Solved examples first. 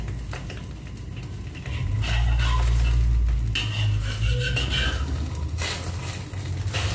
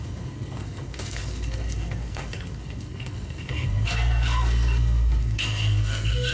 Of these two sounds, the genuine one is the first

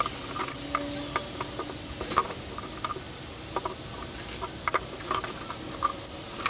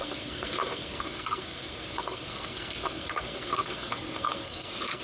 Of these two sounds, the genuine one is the first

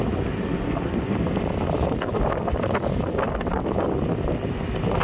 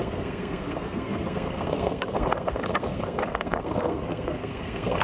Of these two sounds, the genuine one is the first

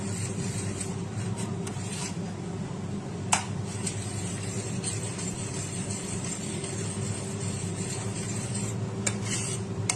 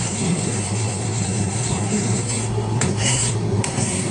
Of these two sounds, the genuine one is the first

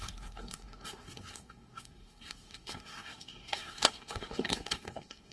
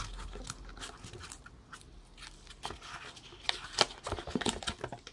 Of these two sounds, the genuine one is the second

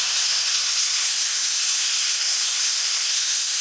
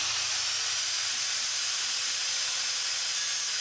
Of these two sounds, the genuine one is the second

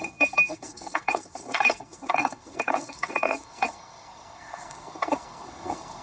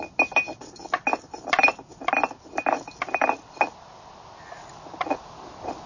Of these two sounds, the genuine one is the second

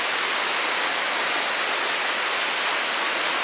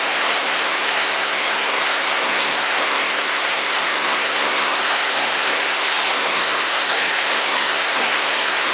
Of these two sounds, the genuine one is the first